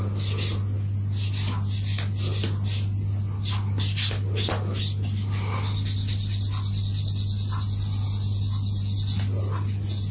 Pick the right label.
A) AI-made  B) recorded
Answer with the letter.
B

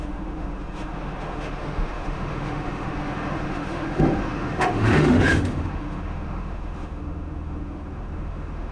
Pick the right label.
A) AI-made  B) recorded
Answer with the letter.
A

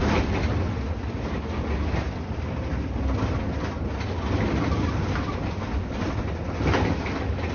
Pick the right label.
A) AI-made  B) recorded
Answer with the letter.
B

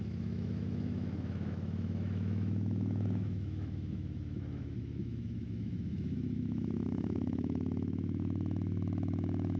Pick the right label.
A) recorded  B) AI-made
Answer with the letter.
B